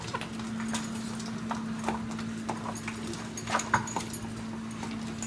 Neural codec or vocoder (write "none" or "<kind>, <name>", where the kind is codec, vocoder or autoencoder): none